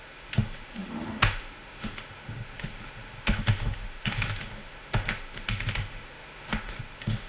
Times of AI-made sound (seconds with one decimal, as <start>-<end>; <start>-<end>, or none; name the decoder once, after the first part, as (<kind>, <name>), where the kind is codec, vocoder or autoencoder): 0.0-7.3 (autoencoder, DAC-VAE)